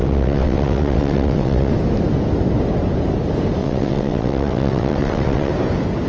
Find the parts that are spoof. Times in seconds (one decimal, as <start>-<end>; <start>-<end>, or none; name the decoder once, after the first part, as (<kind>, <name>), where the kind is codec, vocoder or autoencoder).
0.0-1.7 (vocoder, WaveNeXt); 3.6-5.5